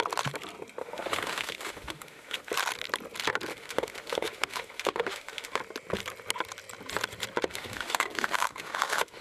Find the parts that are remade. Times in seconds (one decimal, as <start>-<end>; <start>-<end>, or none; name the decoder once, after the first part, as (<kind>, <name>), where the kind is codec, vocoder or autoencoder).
0.8-2.5 (autoencoder, DAC-VAE); 3.5-5.6; 7.5-9.2